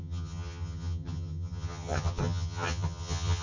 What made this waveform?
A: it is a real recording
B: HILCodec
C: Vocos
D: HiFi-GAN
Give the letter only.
D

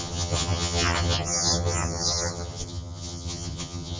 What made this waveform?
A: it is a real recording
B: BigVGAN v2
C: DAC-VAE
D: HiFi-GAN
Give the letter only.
D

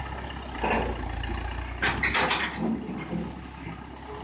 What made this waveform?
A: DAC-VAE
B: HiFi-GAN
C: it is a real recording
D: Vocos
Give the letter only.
C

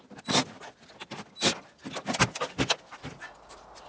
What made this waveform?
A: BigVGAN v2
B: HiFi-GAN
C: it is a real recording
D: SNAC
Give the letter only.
C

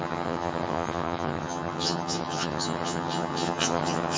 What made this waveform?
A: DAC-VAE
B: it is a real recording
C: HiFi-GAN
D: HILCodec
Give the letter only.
C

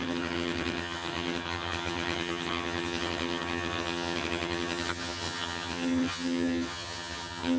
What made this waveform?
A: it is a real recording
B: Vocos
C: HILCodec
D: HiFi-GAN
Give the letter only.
D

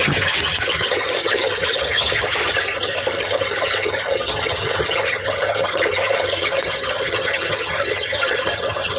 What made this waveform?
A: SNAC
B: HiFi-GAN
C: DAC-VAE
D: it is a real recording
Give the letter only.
B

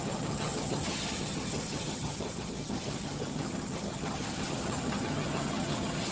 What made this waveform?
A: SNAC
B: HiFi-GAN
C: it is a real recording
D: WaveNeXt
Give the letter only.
B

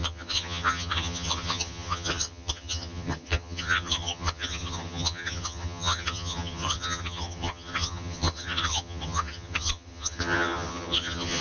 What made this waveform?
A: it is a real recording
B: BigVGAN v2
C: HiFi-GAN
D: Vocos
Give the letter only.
C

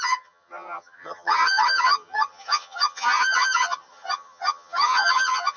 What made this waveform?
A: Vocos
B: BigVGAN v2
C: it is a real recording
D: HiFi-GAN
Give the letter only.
D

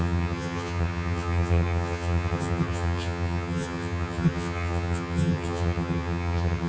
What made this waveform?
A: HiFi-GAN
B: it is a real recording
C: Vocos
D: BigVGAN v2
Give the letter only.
A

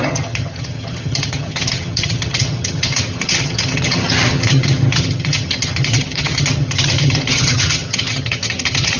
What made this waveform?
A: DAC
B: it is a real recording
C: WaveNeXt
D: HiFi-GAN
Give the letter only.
D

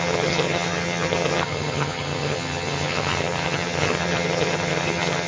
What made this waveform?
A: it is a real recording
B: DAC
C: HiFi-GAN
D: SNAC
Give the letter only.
C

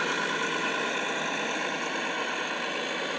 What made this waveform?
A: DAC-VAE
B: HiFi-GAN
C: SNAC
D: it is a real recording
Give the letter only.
D